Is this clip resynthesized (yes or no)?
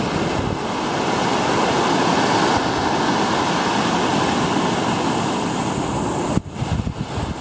no